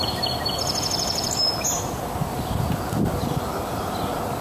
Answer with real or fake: real